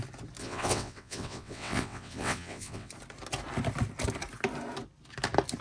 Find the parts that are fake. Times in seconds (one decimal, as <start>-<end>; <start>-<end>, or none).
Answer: 0.4-2.9

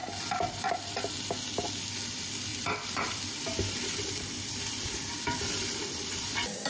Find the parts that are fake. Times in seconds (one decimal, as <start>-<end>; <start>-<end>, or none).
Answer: 2.5-6.7

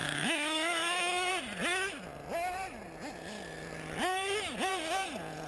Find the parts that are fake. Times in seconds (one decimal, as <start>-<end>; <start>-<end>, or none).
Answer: 0.0-1.3

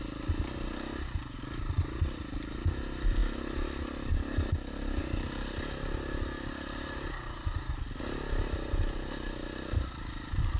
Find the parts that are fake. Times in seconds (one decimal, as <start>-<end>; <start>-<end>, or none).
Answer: none

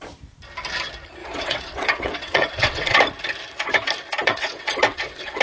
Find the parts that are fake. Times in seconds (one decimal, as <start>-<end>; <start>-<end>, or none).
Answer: 1.2-3.0; 4.2-5.4

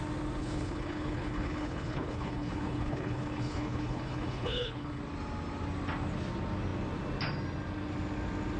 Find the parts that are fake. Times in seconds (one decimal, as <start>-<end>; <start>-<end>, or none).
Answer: 0.4-5.0